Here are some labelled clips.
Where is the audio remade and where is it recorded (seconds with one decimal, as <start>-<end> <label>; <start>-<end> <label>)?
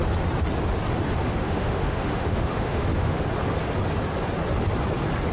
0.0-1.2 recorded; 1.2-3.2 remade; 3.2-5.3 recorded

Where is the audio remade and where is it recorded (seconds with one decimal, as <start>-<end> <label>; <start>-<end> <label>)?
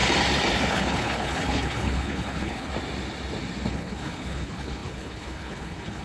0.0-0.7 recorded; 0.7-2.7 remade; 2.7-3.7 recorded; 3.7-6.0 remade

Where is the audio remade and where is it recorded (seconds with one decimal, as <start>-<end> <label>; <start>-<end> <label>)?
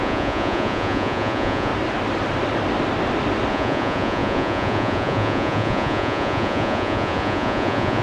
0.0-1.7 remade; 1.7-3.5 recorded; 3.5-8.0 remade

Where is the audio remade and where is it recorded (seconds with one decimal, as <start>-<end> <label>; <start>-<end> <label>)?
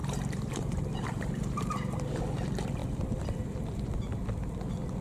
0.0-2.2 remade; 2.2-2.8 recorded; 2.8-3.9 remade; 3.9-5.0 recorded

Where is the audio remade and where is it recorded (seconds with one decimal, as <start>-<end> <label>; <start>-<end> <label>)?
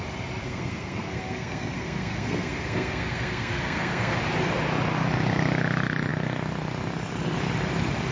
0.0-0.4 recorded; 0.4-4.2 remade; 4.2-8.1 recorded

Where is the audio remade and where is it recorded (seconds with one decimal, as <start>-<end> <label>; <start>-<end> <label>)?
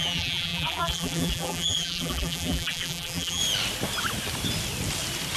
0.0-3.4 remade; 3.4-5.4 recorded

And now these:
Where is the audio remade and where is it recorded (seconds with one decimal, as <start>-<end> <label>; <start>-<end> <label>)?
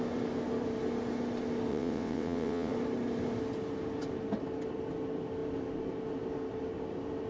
0.0-1.7 recorded; 1.7-2.7 remade; 2.7-7.3 recorded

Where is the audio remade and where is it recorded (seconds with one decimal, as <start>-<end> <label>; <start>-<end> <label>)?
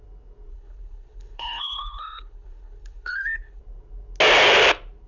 0.0-0.5 recorded; 0.5-3.6 remade; 3.6-5.1 recorded